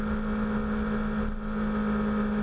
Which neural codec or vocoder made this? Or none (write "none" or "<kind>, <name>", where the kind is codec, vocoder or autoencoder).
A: none